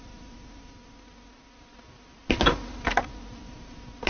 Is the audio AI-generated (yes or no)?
no